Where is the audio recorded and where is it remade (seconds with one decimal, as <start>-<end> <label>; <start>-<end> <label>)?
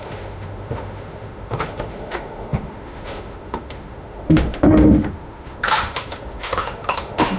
0.0-7.4 remade